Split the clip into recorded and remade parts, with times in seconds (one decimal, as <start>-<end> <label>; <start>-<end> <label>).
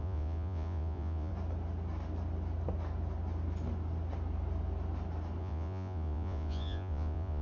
0.0-1.3 remade; 1.3-5.4 recorded; 5.4-7.4 remade